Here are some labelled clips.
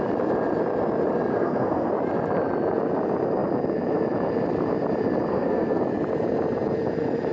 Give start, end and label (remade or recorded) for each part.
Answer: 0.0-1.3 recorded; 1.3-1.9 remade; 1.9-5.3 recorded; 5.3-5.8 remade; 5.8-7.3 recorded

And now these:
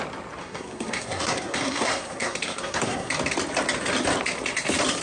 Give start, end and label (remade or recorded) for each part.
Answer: 0.0-0.4 recorded; 0.4-3.1 remade; 3.1-5.0 recorded

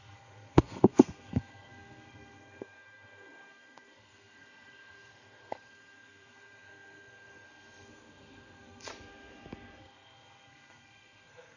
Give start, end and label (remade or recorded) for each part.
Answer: 0.0-8.9 remade; 8.9-9.8 recorded; 9.8-11.6 remade

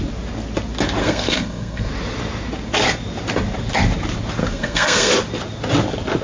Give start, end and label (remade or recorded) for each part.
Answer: 0.0-1.0 recorded; 1.0-1.9 remade; 1.9-4.4 recorded; 4.4-5.1 remade; 5.1-6.2 recorded

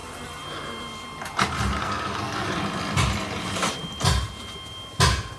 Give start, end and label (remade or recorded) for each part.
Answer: 0.0-1.8 recorded; 1.8-2.5 remade; 2.5-5.4 recorded

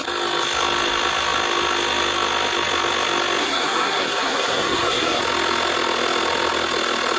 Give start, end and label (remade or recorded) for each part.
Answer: 0.0-3.4 recorded; 3.4-5.2 remade; 5.2-7.2 recorded

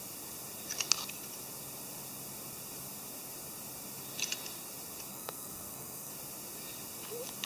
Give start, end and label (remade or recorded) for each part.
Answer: 0.0-5.1 recorded; 5.1-6.1 remade; 6.1-7.5 recorded

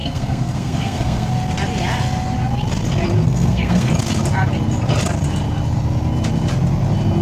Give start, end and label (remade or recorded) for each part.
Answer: 0.0-1.3 remade; 1.3-3.2 recorded; 3.2-3.9 remade; 3.9-7.2 recorded